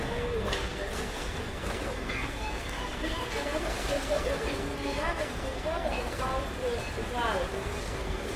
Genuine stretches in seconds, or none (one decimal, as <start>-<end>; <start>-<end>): 6.3-7.5